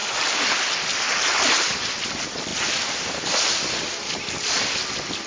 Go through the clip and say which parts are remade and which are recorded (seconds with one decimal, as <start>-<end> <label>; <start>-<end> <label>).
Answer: 0.0-5.3 recorded